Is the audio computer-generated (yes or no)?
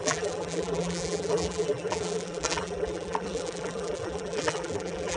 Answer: yes